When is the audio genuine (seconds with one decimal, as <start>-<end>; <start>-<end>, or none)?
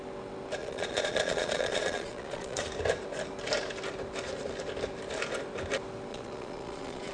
0.0-0.6; 2.7-6.1